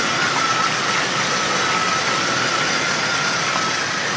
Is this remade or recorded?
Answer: recorded